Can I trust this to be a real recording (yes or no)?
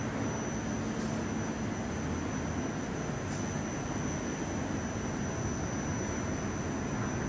yes